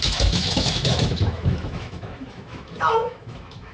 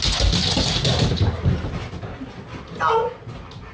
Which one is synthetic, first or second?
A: first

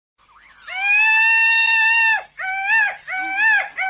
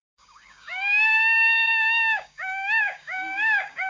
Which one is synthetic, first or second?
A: second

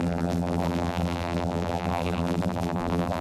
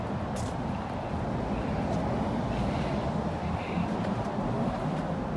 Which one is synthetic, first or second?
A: first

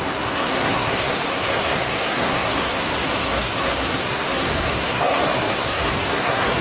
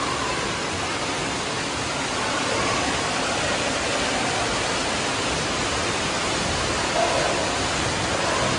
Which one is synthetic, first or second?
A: first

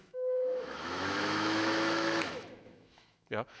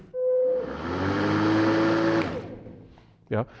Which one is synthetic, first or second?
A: first